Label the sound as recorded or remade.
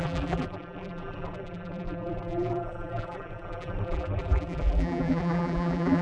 remade